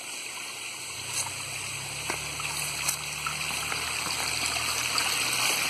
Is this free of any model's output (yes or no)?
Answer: yes